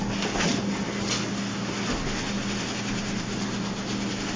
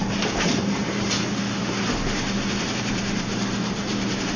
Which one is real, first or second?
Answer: first